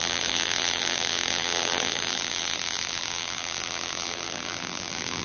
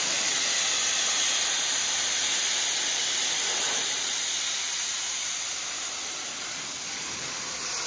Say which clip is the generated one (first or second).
first